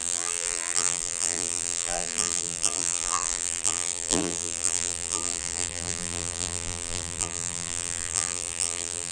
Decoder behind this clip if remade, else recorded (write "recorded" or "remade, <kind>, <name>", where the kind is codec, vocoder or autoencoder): remade, vocoder, BigVGAN v2